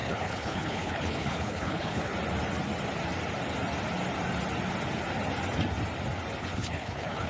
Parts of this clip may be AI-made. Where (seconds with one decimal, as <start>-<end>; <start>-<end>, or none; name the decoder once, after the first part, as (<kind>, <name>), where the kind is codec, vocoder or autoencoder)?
0.0-2.1 (codec, HILCodec); 6.4-7.3